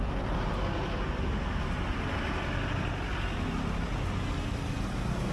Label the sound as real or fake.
real